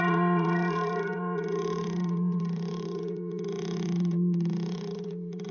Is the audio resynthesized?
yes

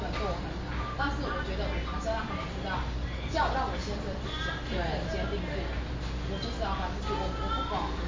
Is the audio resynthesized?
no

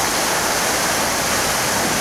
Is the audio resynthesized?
no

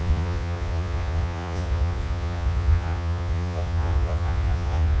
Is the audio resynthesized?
yes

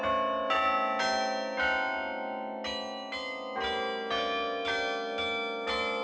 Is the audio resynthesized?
no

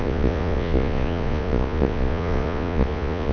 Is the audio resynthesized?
yes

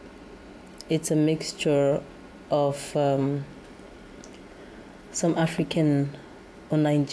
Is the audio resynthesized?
no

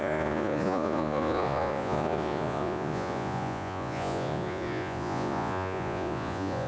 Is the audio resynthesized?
yes